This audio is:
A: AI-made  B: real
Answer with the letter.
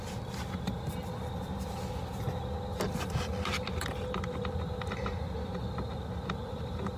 B